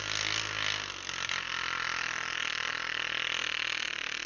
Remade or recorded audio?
recorded